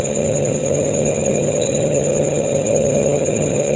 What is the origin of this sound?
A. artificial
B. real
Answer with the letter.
A